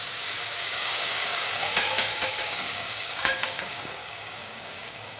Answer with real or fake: fake